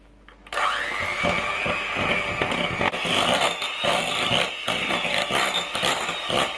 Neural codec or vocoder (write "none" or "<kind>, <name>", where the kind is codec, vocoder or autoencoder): none